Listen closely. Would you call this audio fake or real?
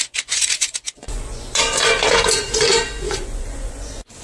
fake